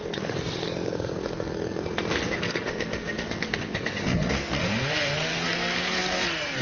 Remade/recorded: remade